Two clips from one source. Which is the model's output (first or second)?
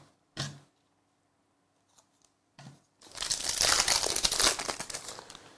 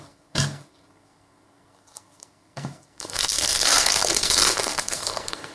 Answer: second